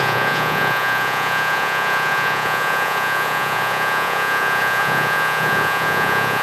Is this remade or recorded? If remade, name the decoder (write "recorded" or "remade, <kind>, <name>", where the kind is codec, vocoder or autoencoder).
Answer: remade, vocoder, Vocos